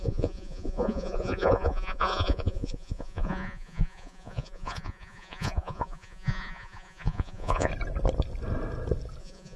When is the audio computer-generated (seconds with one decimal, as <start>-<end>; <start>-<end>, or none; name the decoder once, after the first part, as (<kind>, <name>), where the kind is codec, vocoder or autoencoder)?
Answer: 0.0-7.7 (vocoder, Vocos); 9.2-9.6